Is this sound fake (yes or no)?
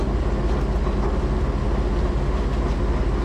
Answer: no